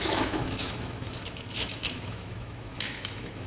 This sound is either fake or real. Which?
fake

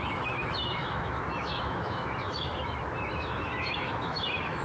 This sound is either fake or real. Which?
fake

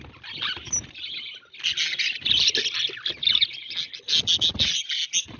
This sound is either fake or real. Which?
real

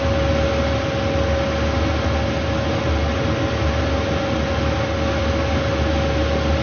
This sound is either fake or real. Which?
real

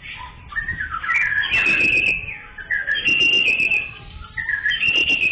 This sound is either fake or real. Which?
real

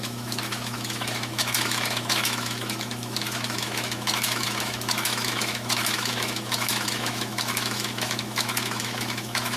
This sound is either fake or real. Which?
fake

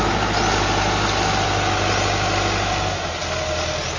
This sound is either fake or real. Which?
real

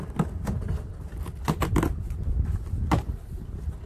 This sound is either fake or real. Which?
real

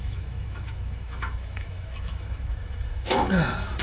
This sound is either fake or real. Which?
fake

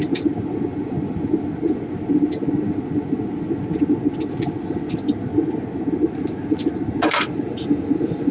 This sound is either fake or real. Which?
real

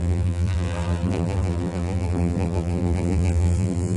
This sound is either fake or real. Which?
fake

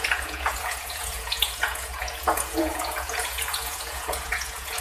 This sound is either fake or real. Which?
fake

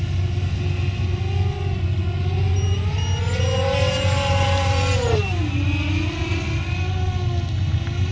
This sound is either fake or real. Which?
real